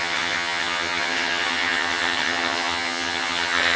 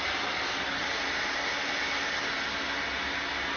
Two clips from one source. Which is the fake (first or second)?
first